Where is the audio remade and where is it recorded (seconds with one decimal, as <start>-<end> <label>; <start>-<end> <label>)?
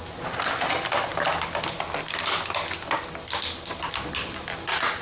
0.0-1.1 remade; 1.1-4.1 recorded; 4.1-5.0 remade